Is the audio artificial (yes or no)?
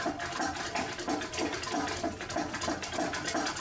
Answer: yes